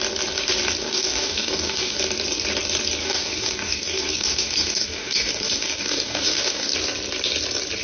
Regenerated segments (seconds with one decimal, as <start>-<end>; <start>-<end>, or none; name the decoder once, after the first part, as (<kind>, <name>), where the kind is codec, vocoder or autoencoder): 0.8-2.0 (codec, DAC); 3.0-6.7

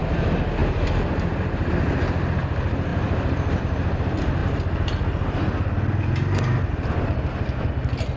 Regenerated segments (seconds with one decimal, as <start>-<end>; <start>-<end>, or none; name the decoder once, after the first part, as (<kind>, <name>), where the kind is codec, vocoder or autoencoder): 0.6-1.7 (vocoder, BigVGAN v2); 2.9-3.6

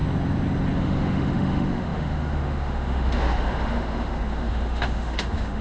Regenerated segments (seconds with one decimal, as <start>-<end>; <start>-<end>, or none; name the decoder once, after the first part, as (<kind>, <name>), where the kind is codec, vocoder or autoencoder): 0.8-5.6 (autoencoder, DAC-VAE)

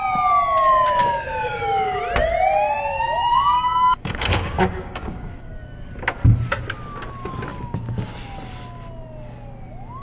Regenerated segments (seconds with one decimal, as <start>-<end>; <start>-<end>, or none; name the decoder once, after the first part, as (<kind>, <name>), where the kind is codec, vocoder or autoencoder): 1.0-2.0 (codec, DAC); 2.9-5.5; 7.5-8.1

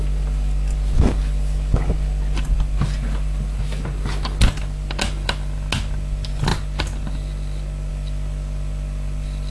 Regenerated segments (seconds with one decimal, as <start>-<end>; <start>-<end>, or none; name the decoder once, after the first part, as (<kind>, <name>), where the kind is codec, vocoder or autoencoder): none